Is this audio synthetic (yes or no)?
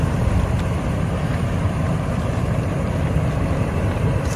yes